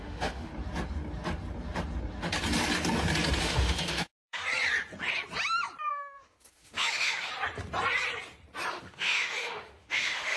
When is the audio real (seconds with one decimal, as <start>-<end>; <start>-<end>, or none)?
0.5-3.4; 4.4-5.9; 7.3-8.7

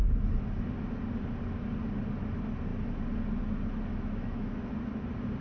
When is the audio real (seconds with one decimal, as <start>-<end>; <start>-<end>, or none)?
0.0-3.9; 4.7-5.4